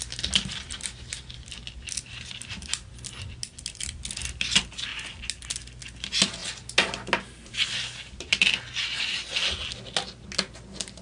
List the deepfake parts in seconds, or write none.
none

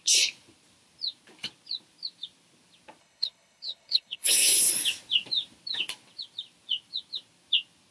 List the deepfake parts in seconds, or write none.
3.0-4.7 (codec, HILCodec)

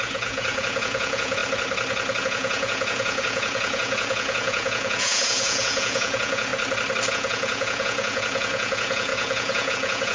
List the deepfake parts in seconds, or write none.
0.0-1.4 (vocoder, Vocos); 2.2-6.5; 7.1-10.1

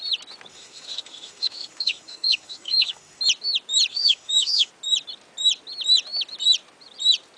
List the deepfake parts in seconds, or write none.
0.5-3.2 (autoencoder, DAC-VAE); 3.9-4.7